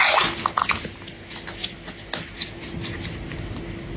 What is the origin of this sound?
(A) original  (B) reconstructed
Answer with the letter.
A